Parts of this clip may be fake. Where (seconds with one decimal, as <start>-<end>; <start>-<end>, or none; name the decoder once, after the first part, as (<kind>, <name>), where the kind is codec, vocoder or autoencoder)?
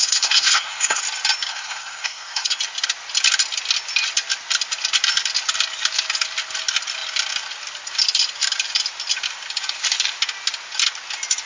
0.0-1.0 (codec, SNAC); 1.5-2.6